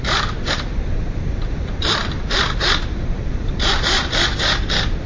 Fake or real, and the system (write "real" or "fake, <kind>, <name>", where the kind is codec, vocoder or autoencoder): fake, vocoder, BigVGAN v2